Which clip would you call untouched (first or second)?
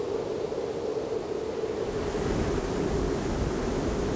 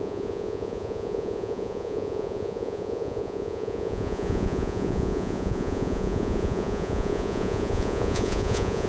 first